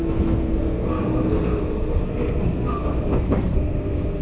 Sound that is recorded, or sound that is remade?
remade